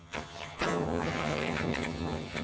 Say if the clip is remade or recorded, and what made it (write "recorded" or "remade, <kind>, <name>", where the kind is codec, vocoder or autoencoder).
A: remade, vocoder, HiFi-GAN